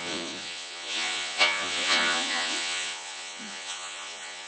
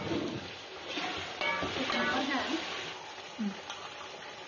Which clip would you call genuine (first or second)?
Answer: second